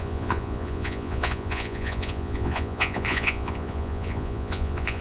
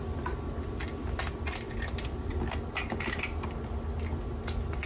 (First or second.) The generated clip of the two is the first